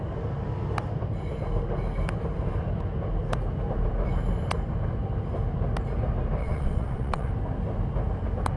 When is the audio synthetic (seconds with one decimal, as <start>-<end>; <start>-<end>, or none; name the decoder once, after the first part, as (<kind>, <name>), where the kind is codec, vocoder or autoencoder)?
6.4-7.3 (vocoder, WaveNeXt)